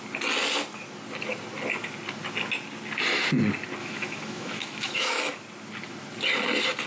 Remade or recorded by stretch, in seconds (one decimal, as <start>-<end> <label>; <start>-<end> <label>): 0.0-3.8 recorded; 3.8-5.2 remade; 5.2-6.9 recorded